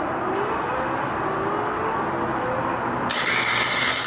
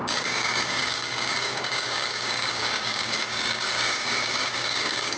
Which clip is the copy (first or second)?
second